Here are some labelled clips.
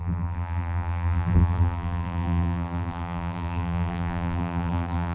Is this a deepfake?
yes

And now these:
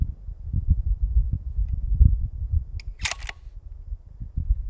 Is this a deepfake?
no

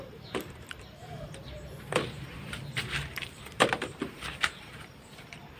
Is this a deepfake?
yes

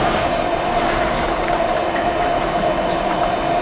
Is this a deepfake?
yes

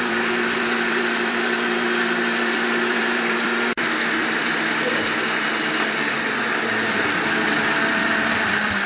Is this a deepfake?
yes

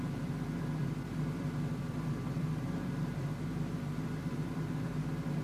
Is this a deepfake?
yes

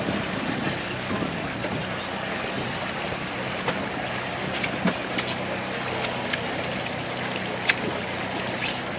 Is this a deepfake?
no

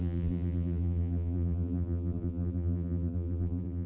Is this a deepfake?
yes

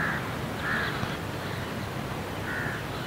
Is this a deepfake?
no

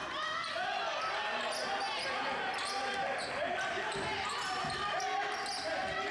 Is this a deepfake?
no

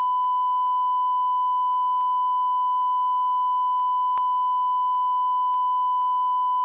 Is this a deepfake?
no